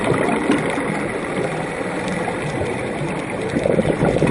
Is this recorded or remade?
recorded